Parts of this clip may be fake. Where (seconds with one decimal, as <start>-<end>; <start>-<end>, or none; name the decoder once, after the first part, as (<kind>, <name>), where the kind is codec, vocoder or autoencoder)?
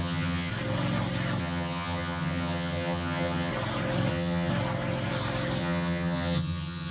0.0-0.5 (vocoder, HiFi-GAN); 1.4-3.5; 4.1-4.5; 5.6-6.9